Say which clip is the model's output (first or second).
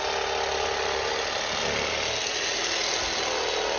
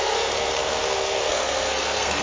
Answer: second